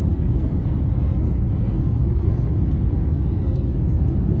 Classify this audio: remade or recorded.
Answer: remade